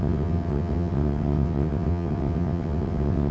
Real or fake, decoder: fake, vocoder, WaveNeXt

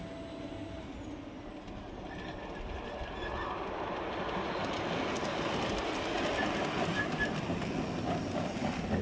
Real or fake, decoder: real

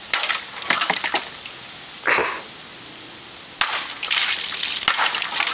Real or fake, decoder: real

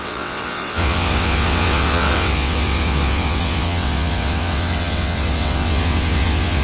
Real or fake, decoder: fake, vocoder, WaveNeXt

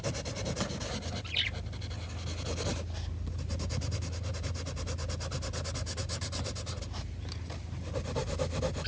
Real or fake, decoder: real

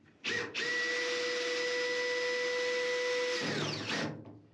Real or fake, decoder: real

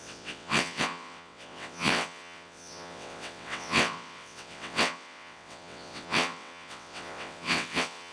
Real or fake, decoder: fake, vocoder, WaveNeXt